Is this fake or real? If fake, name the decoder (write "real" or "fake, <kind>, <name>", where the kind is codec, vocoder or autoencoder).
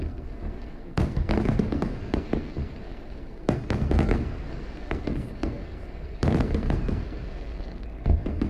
fake, codec, SNAC